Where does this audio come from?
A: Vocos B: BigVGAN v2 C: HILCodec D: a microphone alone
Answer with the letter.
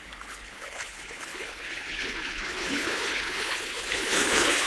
C